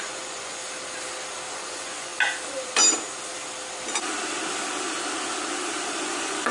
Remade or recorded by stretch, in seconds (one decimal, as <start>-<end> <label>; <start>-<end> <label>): 0.0-0.6 remade; 0.6-1.5 recorded; 1.5-2.1 remade; 2.1-6.0 recorded; 6.0-6.5 remade